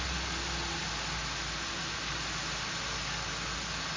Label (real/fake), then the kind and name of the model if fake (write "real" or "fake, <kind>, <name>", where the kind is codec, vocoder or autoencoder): real